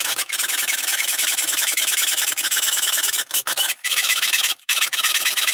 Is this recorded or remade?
remade